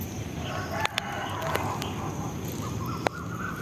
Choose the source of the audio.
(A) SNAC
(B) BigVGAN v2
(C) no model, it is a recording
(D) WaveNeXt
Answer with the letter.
C